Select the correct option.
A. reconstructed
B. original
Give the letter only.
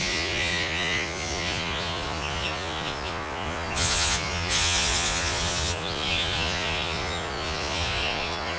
A